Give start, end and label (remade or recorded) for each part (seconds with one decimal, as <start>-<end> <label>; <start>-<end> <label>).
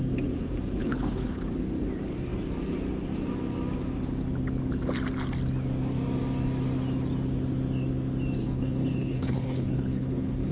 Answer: 0.0-0.8 recorded; 0.8-1.4 remade; 1.4-8.4 recorded; 8.4-10.5 remade